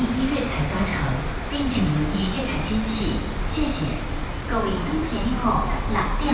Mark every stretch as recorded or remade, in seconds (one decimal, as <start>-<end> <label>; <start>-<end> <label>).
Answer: 0.0-6.3 recorded